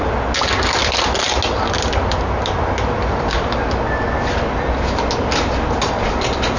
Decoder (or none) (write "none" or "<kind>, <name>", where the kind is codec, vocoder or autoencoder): none